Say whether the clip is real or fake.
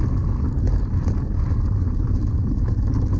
real